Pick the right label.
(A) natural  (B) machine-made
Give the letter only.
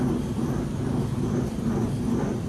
A